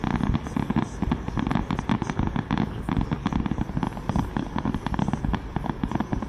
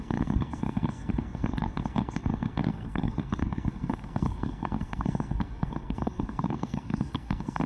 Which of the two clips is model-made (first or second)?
second